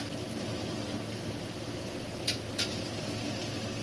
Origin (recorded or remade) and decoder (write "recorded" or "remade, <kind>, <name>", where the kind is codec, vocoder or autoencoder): recorded